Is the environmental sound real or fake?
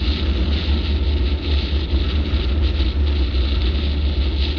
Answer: real